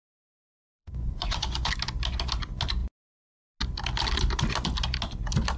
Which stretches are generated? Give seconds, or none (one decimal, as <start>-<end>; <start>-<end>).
0.8-1.7

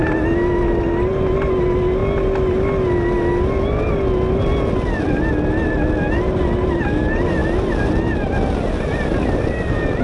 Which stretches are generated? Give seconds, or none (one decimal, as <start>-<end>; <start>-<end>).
none

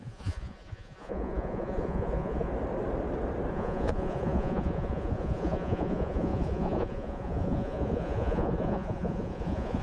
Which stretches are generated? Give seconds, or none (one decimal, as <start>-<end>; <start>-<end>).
0.0-2.5; 3.5-9.8

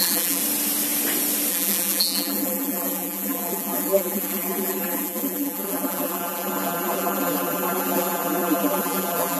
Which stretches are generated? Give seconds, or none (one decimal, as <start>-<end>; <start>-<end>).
0.0-0.4; 1.5-9.4

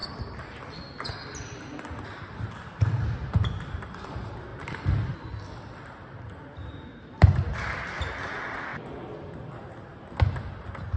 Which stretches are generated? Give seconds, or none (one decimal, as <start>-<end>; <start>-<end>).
none

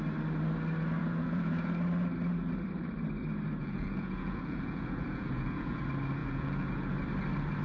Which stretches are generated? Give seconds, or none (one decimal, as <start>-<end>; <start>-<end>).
1.0-1.7; 3.6-5.8; 6.2-7.0

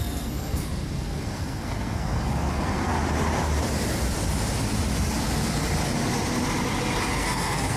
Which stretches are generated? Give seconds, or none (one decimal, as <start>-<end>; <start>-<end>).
0.0-2.9; 7.1-7.8

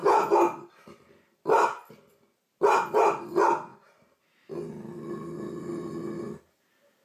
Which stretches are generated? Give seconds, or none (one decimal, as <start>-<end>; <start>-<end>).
none